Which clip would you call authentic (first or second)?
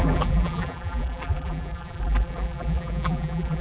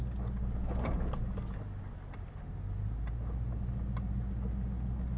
second